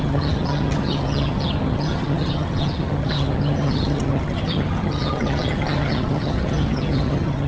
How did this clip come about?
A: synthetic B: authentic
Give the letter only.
A